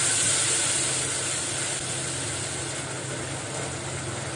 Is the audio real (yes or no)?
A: yes